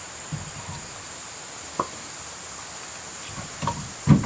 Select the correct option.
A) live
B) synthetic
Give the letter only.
A